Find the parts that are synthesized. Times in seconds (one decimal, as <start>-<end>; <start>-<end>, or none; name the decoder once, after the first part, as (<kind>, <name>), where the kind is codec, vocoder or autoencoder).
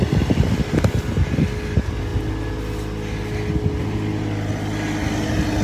none